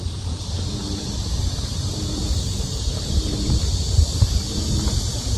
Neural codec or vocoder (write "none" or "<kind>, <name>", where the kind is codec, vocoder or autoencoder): vocoder, BigVGAN v2